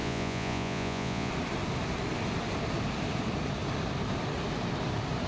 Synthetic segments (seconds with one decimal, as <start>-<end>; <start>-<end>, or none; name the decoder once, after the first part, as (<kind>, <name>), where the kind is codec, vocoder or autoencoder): 0.0-1.3 (vocoder, Vocos)